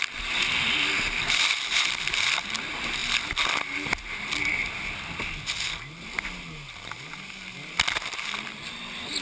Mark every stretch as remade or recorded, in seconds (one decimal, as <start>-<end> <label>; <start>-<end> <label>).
0.0-9.2 recorded